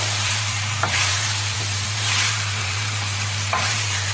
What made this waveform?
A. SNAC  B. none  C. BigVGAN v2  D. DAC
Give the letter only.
C